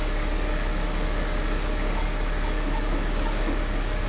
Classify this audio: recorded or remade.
remade